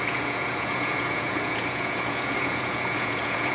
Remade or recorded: remade